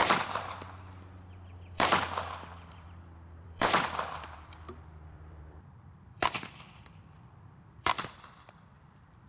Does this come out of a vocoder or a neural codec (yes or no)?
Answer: yes